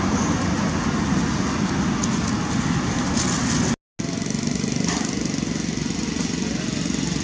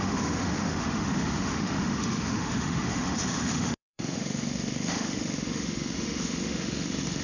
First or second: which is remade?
second